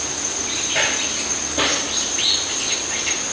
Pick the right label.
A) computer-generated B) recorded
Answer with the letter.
B